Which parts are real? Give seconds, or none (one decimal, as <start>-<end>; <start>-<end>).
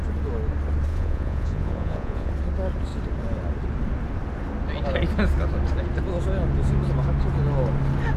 0.0-0.9; 2.3-8.2